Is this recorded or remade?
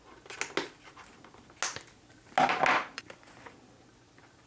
recorded